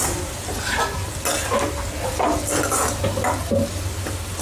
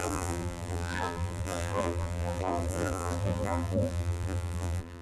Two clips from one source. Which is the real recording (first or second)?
first